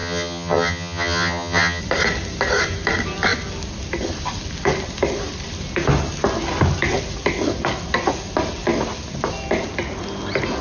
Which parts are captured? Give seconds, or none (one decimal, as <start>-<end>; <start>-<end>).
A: 1.8-10.6